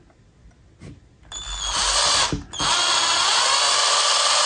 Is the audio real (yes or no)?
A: yes